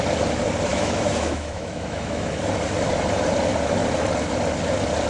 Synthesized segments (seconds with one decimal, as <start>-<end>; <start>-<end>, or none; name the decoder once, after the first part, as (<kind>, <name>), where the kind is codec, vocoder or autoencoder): 0.7-2.4 (autoencoder, DAC-VAE)